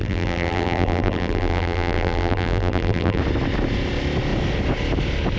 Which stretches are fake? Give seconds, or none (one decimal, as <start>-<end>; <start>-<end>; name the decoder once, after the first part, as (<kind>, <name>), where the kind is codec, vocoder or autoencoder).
0.0-3.2 (vocoder, BigVGAN v2)